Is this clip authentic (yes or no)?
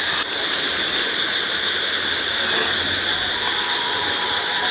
yes